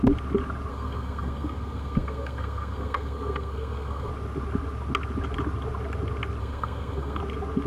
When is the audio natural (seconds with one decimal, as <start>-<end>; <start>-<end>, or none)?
0.0-0.7; 4.1-6.4; 7.2-7.7